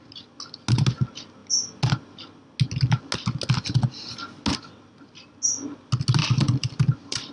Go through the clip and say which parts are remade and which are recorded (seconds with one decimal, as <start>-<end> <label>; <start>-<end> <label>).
0.0-6.2 recorded; 6.2-7.3 remade